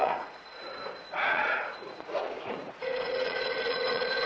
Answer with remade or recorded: remade